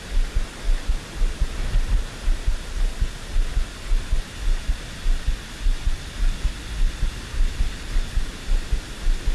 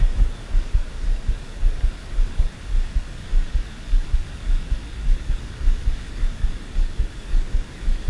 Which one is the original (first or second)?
first